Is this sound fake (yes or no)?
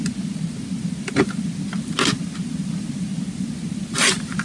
no